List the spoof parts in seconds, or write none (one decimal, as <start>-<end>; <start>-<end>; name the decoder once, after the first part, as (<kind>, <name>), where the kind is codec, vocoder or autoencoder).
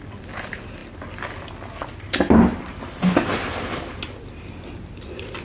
none